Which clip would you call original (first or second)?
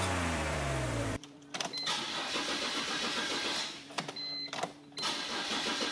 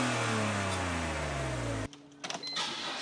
second